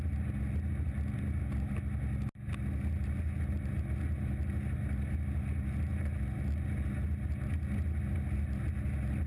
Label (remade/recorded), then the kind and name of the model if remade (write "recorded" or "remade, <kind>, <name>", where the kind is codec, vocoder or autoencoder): recorded